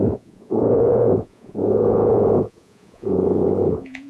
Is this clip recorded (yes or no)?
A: no